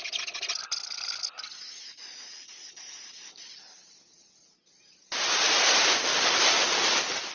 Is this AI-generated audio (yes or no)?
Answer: no